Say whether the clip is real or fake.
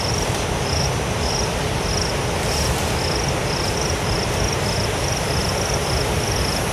fake